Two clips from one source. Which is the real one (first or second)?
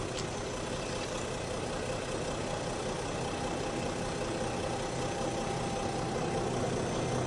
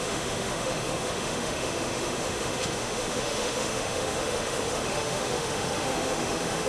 first